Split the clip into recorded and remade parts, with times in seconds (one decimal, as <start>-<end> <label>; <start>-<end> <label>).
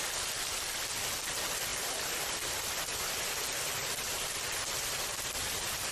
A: 0.0-5.9 recorded